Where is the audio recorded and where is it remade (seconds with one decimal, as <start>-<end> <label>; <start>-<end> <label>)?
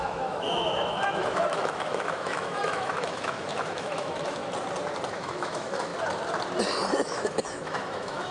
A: 0.0-4.4 remade; 4.4-5.1 recorded; 5.1-5.9 remade; 5.9-6.9 recorded; 6.9-8.3 remade